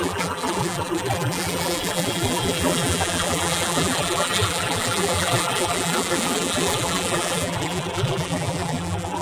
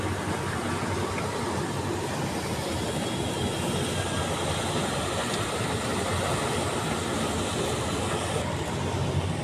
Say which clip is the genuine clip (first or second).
second